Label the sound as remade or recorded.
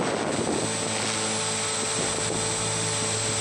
recorded